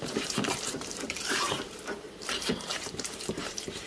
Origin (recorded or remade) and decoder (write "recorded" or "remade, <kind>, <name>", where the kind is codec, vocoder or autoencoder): remade, vocoder, BigVGAN v2